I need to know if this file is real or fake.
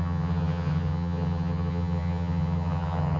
fake